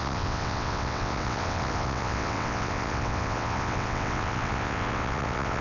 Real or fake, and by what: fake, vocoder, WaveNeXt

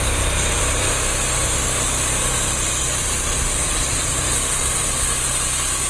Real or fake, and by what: real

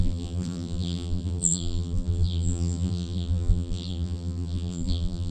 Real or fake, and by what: fake, vocoder, BigVGAN v2